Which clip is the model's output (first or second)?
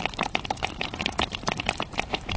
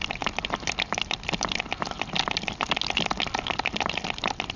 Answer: first